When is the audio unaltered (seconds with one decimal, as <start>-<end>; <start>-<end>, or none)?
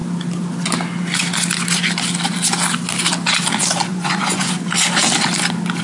0.0-3.9; 4.5-5.8